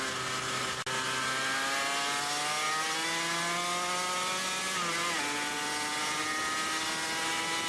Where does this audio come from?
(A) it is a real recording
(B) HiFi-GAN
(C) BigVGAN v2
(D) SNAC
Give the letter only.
A